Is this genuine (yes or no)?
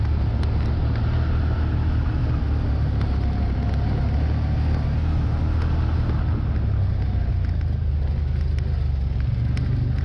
yes